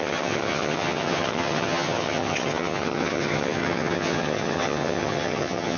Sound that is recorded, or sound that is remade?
remade